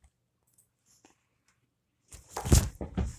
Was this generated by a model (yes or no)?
no